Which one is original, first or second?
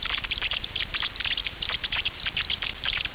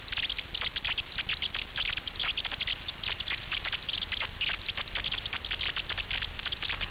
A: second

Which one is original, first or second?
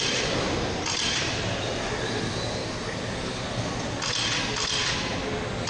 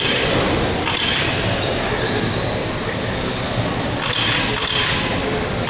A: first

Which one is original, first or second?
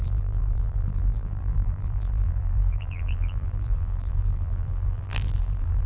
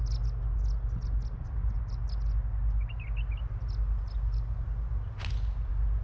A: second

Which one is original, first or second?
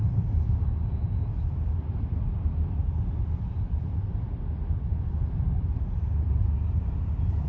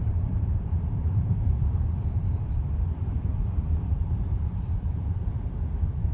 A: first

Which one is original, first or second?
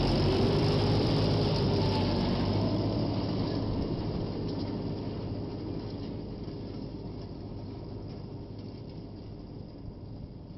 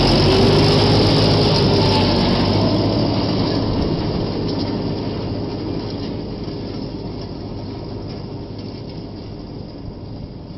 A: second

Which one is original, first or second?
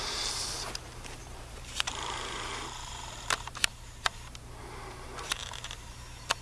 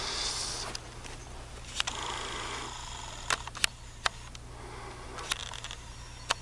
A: second